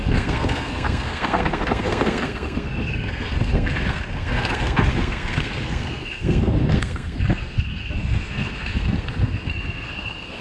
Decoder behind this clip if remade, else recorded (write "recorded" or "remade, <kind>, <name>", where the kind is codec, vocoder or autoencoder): remade, codec, SNAC